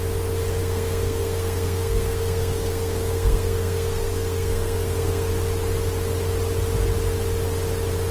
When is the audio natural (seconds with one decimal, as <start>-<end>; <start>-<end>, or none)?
0.0-0.6; 5.3-8.1